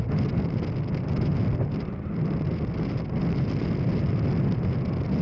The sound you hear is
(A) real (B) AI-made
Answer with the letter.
A